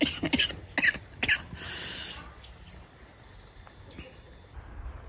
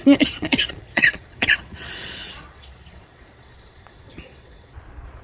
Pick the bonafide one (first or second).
first